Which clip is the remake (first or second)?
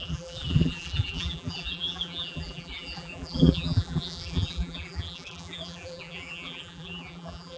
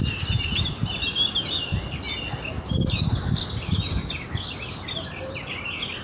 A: first